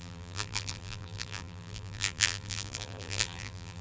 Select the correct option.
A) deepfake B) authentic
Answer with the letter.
A